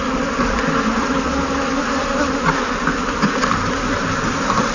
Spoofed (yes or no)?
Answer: no